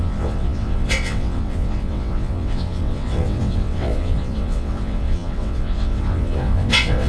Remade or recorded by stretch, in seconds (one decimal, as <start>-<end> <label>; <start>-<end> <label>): 0.0-7.1 remade